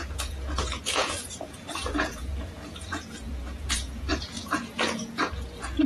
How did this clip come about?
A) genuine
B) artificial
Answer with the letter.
B